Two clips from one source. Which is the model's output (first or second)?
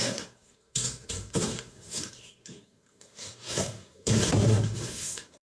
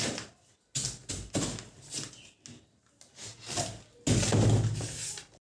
first